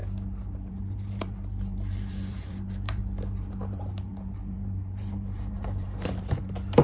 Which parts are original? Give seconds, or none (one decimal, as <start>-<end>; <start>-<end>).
0.0-0.7; 3.0-3.5

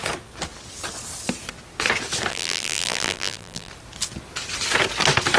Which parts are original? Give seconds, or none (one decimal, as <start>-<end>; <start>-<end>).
0.0-2.3; 3.7-5.4